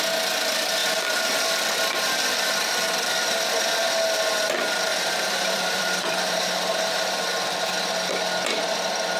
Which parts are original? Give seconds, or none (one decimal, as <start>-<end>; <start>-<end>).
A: 0.0-4.9; 7.2-9.2